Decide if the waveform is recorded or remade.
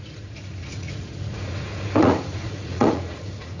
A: remade